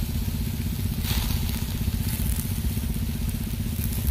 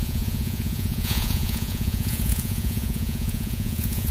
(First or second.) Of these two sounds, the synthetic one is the second